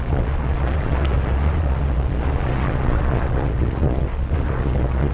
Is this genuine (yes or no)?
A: no